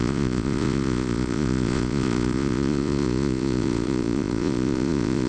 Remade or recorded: remade